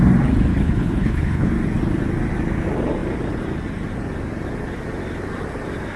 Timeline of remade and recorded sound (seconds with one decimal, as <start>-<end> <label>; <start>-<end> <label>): 0.0-0.5 recorded; 0.5-1.5 remade; 1.5-6.0 recorded